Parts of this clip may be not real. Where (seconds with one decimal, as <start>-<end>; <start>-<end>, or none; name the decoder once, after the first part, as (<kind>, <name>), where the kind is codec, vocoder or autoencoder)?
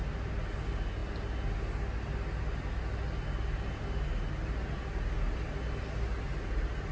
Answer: none